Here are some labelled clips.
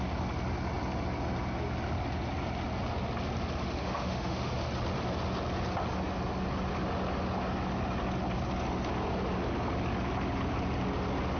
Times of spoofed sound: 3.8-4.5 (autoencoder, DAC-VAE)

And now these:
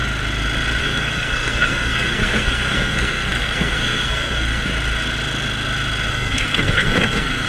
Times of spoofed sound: 0.8-4.7 (codec, SNAC); 6.1-7.5

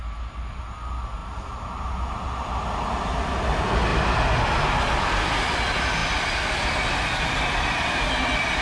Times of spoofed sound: none

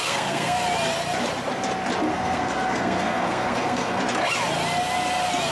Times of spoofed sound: 0.0-0.6 (codec, SNAC); 2.1-4.0

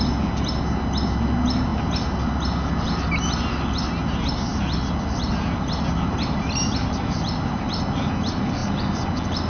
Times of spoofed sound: 4.5-7.6 (vocoder, BigVGAN v2)

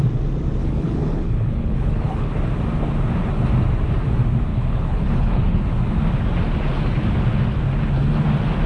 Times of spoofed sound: 0.6-2.3 (codec, HILCodec); 4.5-5.6

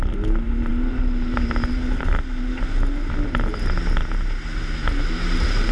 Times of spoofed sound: none